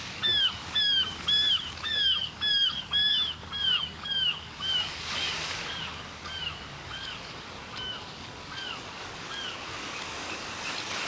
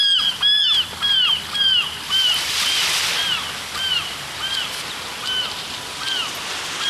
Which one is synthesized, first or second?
first